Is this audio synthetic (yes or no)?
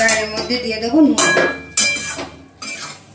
no